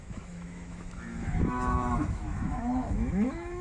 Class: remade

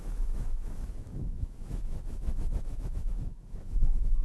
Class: remade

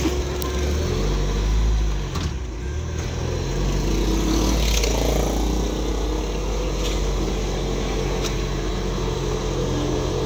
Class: recorded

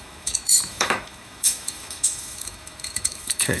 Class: remade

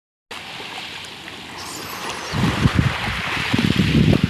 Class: recorded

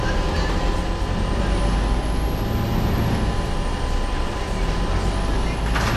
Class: recorded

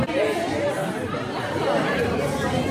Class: recorded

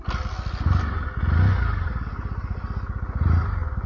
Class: recorded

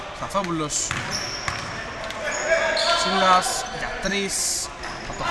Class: recorded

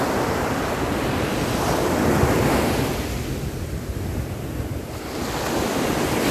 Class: recorded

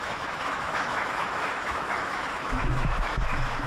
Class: remade